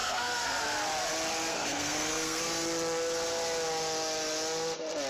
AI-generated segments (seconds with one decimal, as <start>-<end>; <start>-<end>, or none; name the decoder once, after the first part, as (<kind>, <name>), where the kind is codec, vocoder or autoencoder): 0.0-0.6 (codec, SNAC); 1.5-2.4